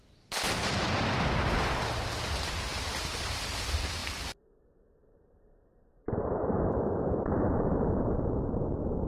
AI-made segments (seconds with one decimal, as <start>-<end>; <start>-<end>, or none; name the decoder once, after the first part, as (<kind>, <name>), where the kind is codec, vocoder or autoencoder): 5.0-8.3 (vocoder, BigVGAN v2)